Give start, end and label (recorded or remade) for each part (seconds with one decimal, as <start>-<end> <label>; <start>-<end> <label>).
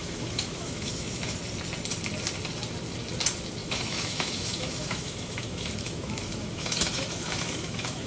0.0-1.4 remade; 1.4-3.6 recorded; 3.6-8.1 remade